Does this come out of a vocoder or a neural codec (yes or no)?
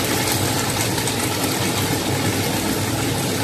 no